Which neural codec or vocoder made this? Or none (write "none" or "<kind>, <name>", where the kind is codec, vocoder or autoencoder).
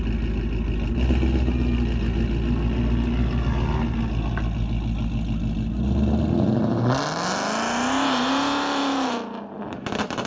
none